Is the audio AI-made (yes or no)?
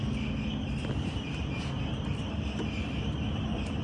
no